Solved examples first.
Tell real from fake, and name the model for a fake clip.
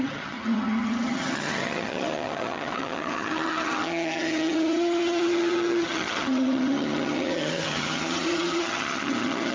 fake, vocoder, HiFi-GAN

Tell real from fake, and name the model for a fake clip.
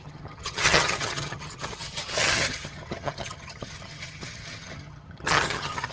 fake, vocoder, HiFi-GAN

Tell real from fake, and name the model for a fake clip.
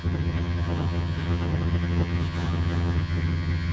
fake, vocoder, HiFi-GAN